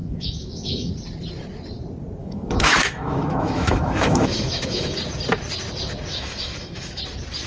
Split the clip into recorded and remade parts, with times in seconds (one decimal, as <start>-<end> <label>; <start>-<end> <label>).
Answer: 0.0-0.9 remade; 0.9-2.2 recorded; 2.2-5.0 remade; 5.0-6.1 recorded; 6.1-7.0 remade; 7.0-7.5 recorded